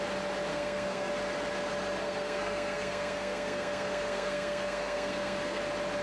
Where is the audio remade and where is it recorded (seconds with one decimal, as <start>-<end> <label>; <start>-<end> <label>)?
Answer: 0.0-0.5 recorded; 0.5-1.1 remade; 1.1-2.0 recorded; 2.0-5.6 remade; 5.6-6.0 recorded